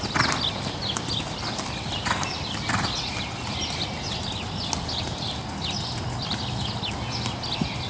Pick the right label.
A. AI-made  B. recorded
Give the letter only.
B